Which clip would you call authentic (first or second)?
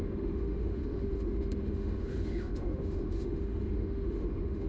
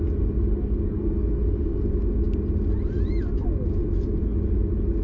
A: second